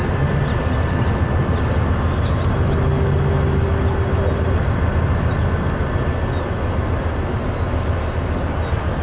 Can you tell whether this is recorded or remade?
recorded